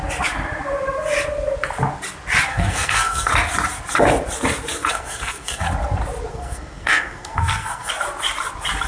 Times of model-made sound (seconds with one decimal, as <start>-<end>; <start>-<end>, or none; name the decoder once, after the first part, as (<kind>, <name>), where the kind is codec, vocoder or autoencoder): 2.5-3.3 (codec, SNAC); 4.8-5.6; 6.3-7.9